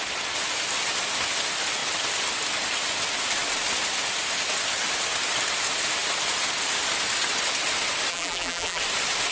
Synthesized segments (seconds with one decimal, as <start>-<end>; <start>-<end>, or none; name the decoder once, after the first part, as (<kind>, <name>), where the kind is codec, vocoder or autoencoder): 8.1-8.8 (vocoder, BigVGAN v2)